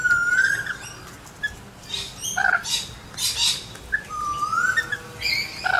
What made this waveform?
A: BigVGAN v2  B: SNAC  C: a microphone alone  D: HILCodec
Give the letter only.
C